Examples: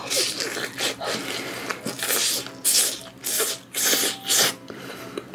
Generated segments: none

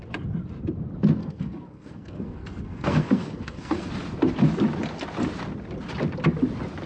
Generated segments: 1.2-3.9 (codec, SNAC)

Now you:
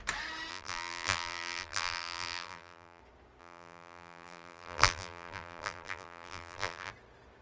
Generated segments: 0.5-3.0 (vocoder, BigVGAN v2); 3.4-6.9

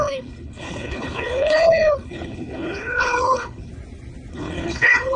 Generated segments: 0.0-3.7 (codec, HILCodec); 4.3-5.2

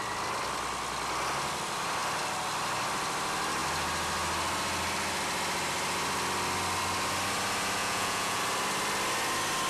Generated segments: 7.8-8.4 (vocoder, Vocos)

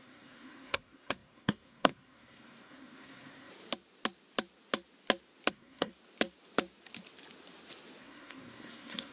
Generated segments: 0.0-3.5 (codec, SNAC); 5.5-5.9; 8.0-9.1

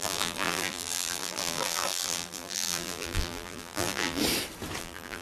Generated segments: 0.0-4.2 (vocoder, BigVGAN v2); 4.8-5.2

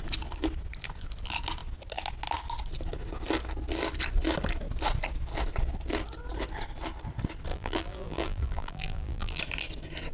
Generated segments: 7.5-9.4 (vocoder, BigVGAN v2)